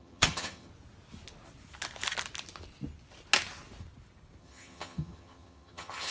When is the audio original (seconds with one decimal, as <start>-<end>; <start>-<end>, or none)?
0.7-4.4